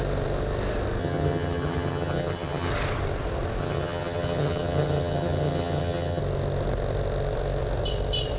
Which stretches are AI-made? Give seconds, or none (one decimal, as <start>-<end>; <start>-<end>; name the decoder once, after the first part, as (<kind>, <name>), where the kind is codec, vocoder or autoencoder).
1.0-2.7 (vocoder, HiFi-GAN); 3.6-6.2